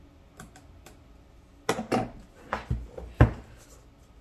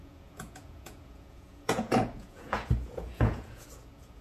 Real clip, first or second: first